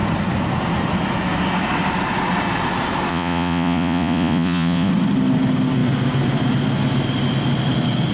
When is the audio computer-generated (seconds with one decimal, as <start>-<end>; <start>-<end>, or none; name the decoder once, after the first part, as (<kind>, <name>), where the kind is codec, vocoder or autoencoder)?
3.1-4.9 (vocoder, Vocos)